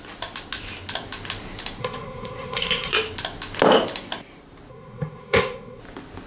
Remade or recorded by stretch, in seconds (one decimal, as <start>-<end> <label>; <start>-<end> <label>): 0.0-1.8 recorded; 1.8-2.9 remade; 2.9-4.7 recorded; 4.7-5.8 remade; 5.8-6.3 recorded